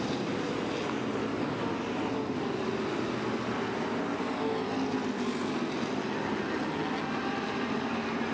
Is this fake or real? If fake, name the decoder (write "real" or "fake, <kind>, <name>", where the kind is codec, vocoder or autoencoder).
real